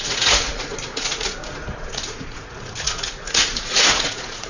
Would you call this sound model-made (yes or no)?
yes